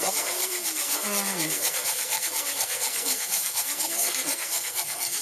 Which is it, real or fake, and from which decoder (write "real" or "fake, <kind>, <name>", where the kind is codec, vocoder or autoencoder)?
fake, codec, SNAC